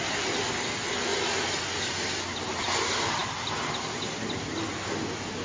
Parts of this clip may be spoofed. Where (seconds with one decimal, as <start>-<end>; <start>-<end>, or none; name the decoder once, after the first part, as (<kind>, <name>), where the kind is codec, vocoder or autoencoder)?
none